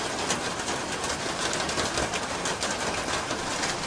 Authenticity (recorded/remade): recorded